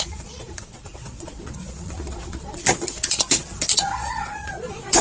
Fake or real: fake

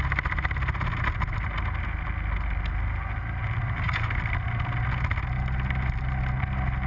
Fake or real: real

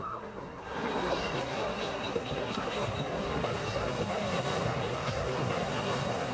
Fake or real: fake